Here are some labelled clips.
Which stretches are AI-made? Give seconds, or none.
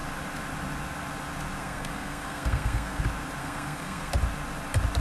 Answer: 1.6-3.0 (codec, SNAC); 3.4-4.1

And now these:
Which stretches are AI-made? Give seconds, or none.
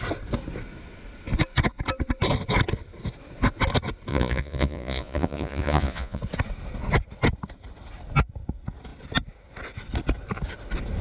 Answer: 4.1-6.2 (vocoder, Vocos)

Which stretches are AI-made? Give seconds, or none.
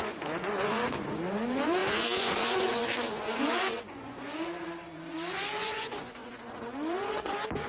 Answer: 0.0-7.7 (vocoder, Vocos)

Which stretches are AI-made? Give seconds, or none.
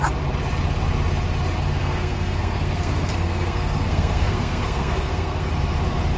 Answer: 1.8-5.5 (codec, SNAC)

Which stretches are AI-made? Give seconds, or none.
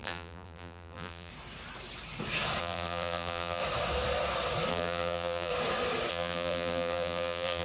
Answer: 0.0-1.3 (vocoder, BigVGAN v2); 2.6-3.6; 4.7-5.5; 6.1-7.6